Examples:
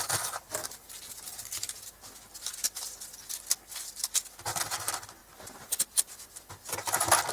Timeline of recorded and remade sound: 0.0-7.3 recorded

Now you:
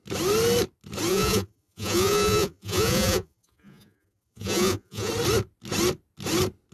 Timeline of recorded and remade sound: 0.0-1.1 recorded; 1.1-5.1 remade; 5.1-6.7 recorded

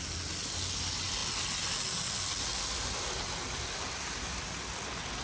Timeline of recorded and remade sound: 0.0-5.2 recorded

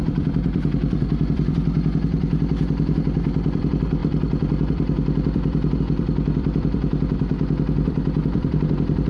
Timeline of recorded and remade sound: 0.0-9.1 remade